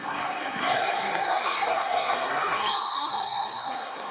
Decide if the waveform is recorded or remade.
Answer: remade